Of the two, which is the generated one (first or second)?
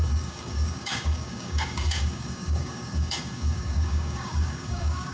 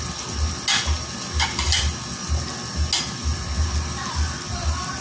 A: first